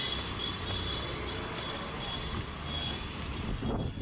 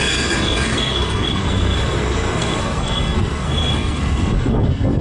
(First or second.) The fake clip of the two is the second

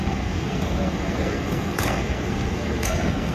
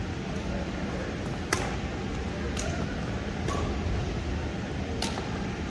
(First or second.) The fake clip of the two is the first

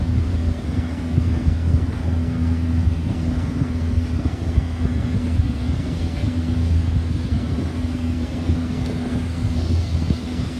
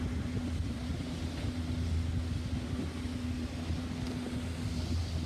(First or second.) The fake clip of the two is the first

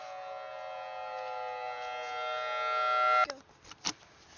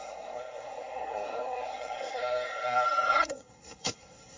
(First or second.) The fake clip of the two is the second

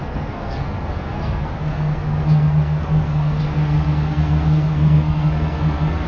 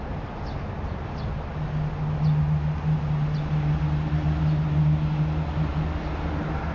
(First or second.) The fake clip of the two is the first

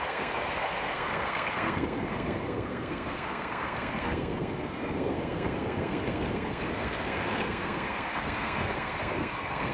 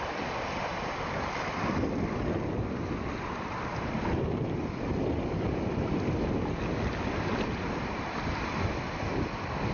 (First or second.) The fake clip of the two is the first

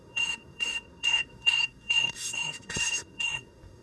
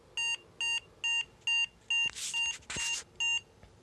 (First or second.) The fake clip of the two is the first